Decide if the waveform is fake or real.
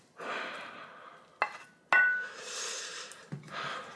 real